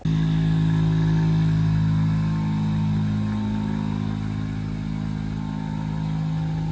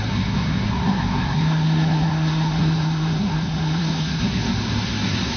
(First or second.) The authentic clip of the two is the first